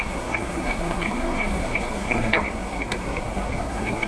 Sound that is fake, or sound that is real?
fake